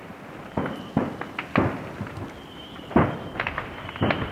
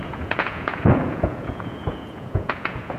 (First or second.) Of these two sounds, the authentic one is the first